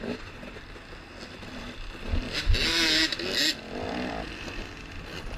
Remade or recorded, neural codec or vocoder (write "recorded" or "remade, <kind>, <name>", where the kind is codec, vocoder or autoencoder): recorded